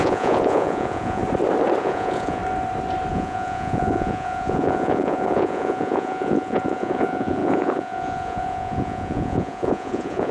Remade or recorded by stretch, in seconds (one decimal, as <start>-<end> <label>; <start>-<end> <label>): 0.0-1.2 remade; 1.2-1.8 recorded; 1.8-2.4 remade; 2.4-3.1 recorded; 3.1-10.3 remade